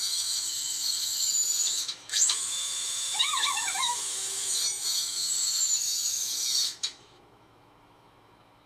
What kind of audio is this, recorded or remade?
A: remade